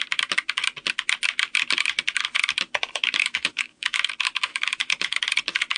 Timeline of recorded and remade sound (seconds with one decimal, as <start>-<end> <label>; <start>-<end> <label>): 0.0-3.2 recorded; 3.2-4.0 remade; 4.0-4.5 recorded; 4.5-5.2 remade; 5.2-5.8 recorded